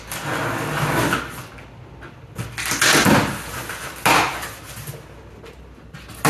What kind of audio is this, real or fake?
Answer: real